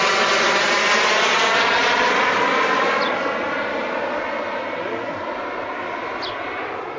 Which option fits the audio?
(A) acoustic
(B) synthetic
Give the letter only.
A